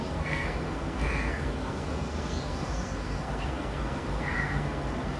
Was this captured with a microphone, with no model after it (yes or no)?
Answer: no